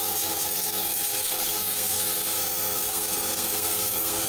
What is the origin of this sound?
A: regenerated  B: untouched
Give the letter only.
A